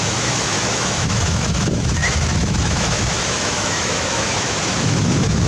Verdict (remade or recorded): remade